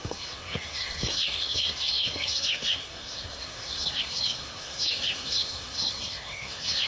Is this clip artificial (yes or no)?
yes